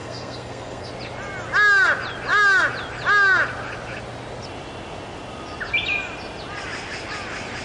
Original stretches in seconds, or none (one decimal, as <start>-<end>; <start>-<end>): 0.9-7.6